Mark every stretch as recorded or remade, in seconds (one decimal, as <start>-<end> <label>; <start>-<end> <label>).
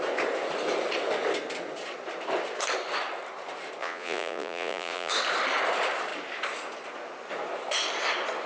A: 0.0-3.8 recorded; 3.8-5.1 remade; 5.1-8.5 recorded